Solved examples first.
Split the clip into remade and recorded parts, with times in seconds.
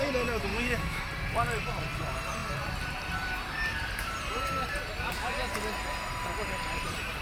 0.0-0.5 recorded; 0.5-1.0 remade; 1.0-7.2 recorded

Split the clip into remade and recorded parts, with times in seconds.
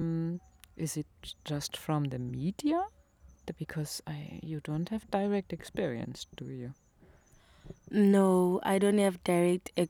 0.0-9.9 recorded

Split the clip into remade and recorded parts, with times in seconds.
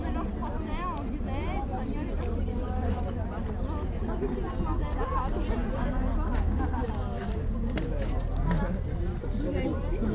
0.0-2.5 recorded; 2.5-3.0 remade; 3.0-10.1 recorded